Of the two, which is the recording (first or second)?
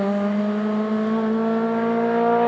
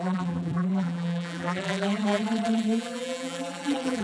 first